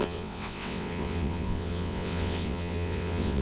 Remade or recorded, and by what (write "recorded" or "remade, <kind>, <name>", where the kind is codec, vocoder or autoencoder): remade, vocoder, WaveNeXt